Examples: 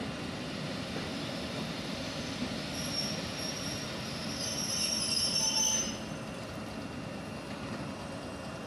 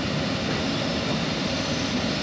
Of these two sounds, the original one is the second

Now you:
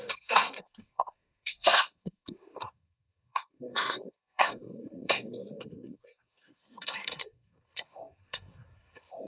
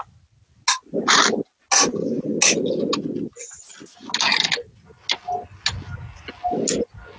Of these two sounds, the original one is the second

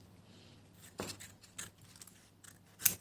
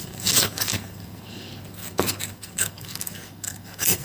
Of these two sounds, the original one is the first